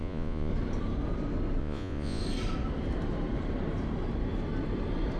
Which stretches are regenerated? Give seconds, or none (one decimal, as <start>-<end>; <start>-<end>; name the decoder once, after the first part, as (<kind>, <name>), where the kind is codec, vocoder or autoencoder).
0.0-0.5 (vocoder, Vocos); 1.6-2.2